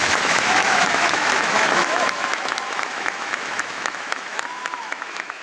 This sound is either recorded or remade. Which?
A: remade